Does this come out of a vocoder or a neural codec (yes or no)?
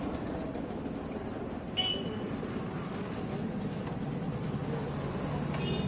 no